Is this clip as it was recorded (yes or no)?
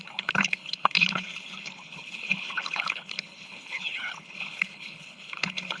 no